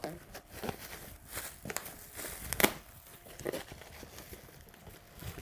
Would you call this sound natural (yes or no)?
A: yes